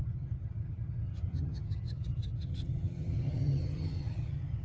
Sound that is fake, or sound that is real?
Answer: fake